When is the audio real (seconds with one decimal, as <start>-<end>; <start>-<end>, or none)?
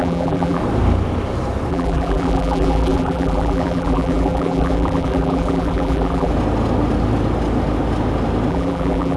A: 0.6-1.7; 6.3-8.5